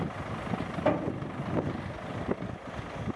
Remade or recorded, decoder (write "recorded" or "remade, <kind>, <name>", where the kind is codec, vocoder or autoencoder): recorded